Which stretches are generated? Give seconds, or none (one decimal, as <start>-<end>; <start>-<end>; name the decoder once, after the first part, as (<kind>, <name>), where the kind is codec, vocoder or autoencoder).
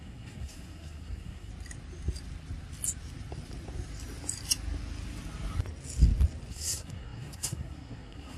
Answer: 0.0-1.5 (codec, SNAC); 6.5-8.4